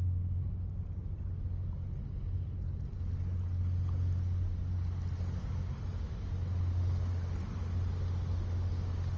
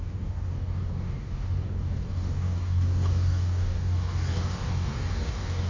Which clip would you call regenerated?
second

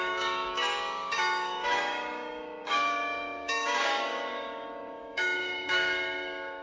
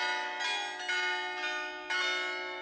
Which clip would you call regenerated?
first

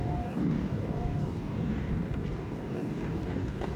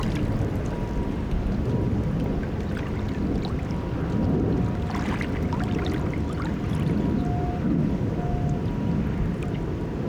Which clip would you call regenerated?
first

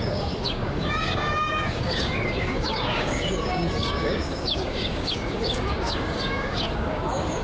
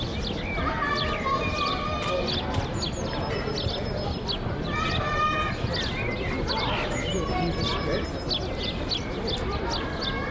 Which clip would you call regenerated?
first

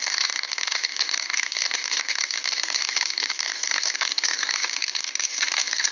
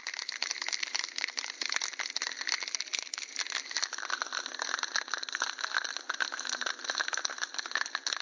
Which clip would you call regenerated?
first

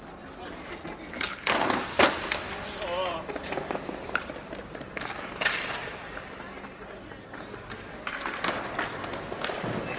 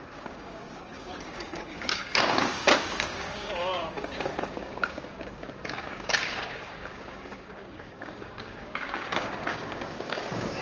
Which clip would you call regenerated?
second